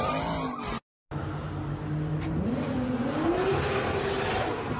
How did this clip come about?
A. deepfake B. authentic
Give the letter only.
B